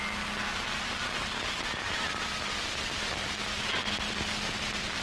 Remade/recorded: recorded